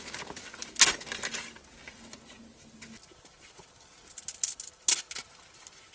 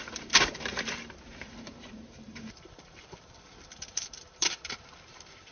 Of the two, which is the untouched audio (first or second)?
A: first